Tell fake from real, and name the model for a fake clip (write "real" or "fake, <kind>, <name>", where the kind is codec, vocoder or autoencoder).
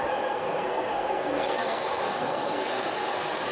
fake, codec, SNAC